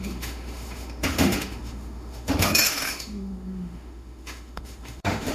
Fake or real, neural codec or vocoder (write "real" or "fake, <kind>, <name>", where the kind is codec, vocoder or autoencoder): fake, autoencoder, DAC-VAE